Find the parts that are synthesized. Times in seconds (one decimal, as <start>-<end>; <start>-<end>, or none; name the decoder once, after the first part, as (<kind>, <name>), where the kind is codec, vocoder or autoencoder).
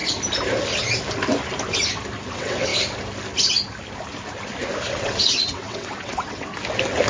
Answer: 2.3-2.7 (vocoder, WaveNeXt); 4.9-6.5